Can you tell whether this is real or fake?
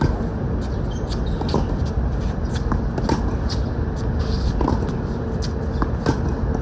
real